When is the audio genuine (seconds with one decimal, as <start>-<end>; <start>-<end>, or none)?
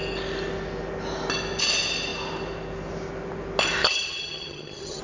0.0-3.8